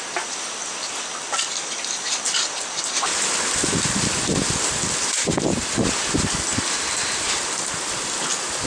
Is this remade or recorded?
remade